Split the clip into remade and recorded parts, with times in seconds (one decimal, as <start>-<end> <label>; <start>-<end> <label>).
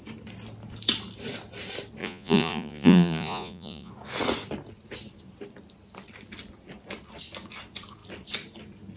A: 0.0-2.0 recorded; 2.0-3.9 remade; 3.9-9.0 recorded